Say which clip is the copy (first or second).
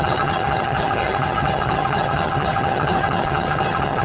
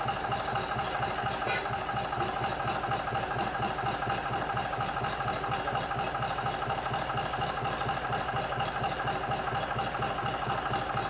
first